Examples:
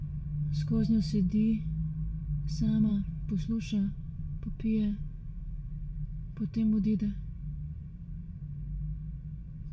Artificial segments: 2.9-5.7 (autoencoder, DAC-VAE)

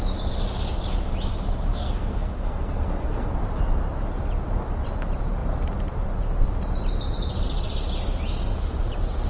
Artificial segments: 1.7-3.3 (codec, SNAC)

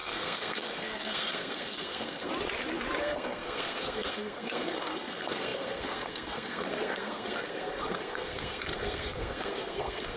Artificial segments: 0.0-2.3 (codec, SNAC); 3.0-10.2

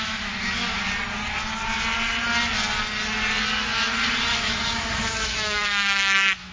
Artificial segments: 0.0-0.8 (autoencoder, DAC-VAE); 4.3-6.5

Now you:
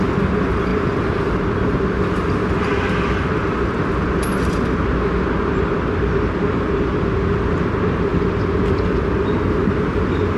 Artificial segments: 8.1-9.6 (vocoder, BigVGAN v2)

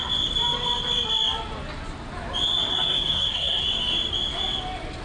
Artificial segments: 2.7-3.6 (codec, SNAC)

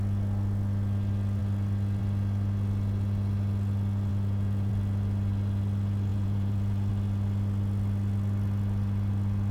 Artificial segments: 4.1-4.7 (vocoder, Vocos); 6.1-6.9

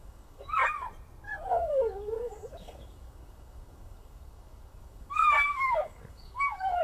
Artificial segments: 0.0-0.6 (codec, DAC); 1.5-6.8